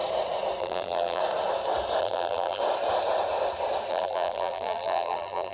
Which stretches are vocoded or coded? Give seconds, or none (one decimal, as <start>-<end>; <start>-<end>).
0.6-1.2; 2.0-2.6; 3.9-5.5